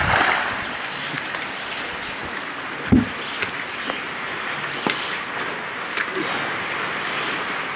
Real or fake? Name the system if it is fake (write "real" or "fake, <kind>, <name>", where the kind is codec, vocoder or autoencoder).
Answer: real